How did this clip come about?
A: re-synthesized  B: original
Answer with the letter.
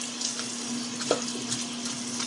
B